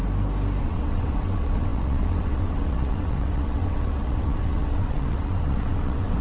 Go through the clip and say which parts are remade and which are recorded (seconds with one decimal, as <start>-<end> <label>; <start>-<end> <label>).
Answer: 0.0-0.6 recorded; 0.6-6.2 remade